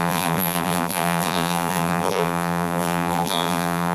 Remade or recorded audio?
remade